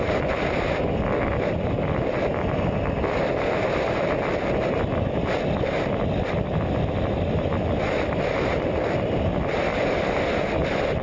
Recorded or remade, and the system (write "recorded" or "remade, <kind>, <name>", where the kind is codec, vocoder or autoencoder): recorded